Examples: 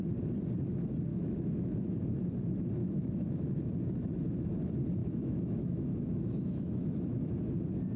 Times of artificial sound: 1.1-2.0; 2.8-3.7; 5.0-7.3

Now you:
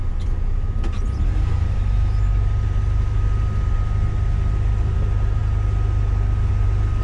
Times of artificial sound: none

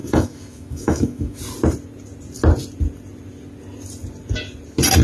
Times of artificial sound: 0.0-1.4